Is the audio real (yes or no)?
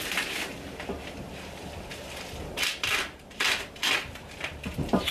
no